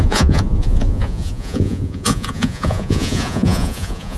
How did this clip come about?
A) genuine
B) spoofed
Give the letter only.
B